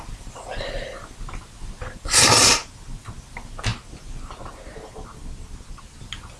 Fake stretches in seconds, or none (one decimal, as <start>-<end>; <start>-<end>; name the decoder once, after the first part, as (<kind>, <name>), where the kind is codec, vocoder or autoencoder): none

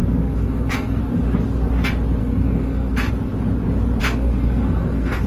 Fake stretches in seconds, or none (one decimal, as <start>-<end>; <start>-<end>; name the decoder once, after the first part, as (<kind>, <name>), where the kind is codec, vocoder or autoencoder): 0.0-1.0 (codec, SNAC); 2.2-3.1; 4.0-5.3

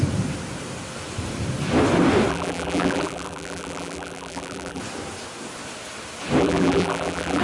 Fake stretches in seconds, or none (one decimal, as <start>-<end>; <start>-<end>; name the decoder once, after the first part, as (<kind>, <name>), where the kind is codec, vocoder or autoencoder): 2.3-4.8 (vocoder, BigVGAN v2); 6.4-7.4

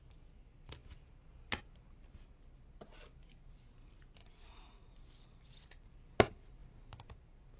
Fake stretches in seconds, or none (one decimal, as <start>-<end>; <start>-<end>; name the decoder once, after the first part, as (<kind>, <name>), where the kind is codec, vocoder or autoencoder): 4.2-4.9 (vocoder, Vocos)